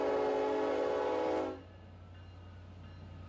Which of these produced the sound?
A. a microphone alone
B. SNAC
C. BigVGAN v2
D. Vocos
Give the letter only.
A